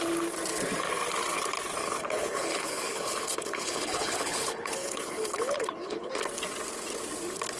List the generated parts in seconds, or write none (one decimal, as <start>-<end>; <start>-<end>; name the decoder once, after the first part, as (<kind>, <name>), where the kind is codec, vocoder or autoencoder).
1.8-6.1 (codec, HILCodec)